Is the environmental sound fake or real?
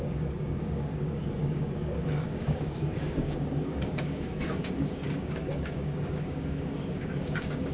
fake